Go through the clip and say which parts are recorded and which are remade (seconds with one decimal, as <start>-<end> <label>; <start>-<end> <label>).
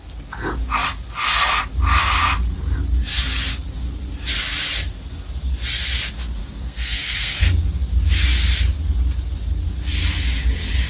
0.0-6.4 recorded; 6.4-7.5 remade; 7.5-10.9 recorded